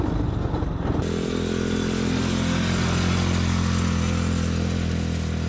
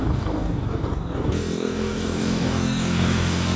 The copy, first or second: second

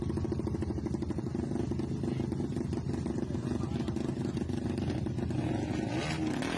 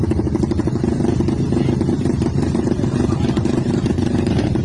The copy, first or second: second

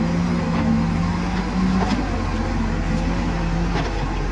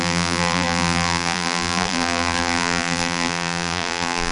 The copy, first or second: second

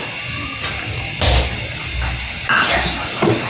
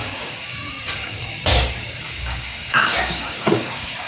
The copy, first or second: second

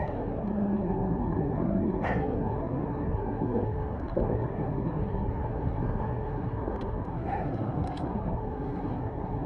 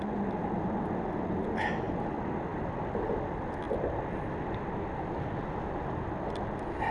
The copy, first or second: first